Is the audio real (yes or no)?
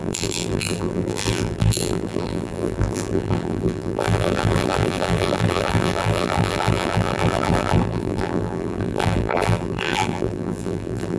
no